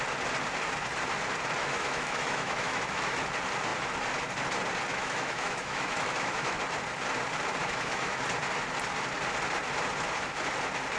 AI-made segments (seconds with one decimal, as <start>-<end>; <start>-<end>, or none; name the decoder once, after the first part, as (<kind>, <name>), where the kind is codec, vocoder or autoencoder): 1.6-3.2 (autoencoder, DAC-VAE); 4.9-6.6; 7.6-8.2